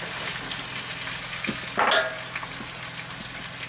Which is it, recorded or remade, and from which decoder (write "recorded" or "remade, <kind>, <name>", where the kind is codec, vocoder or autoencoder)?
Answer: recorded